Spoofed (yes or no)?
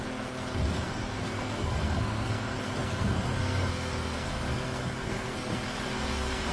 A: yes